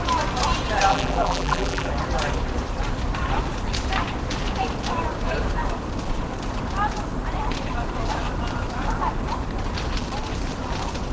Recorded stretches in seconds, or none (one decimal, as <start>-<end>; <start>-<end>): 0.0-0.9; 1.9-11.1